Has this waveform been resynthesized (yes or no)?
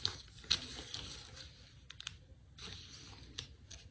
no